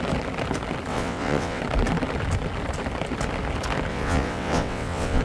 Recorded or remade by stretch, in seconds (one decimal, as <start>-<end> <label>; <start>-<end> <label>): 0.0-0.9 recorded; 0.9-1.6 remade; 1.6-3.9 recorded; 3.9-5.2 remade